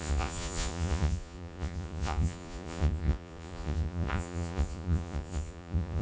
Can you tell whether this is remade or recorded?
remade